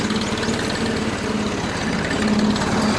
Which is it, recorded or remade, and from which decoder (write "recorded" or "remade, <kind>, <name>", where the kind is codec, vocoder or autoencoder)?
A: recorded